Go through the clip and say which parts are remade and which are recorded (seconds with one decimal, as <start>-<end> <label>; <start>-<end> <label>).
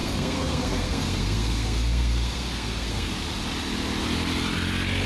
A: 0.0-3.1 remade; 3.1-5.1 recorded